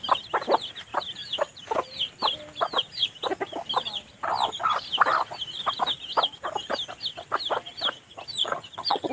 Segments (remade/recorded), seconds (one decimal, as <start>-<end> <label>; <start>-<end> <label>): 0.0-8.4 recorded; 8.4-9.1 remade